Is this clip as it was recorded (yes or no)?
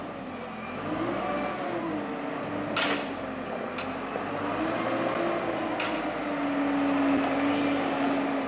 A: yes